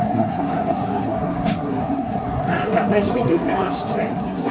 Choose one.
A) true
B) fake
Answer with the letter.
B